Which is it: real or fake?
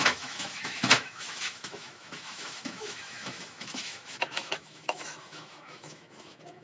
fake